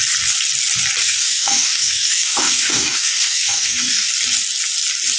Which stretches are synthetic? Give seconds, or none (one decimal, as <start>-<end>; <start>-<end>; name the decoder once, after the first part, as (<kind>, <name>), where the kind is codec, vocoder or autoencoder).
1.0-4.1 (codec, DAC)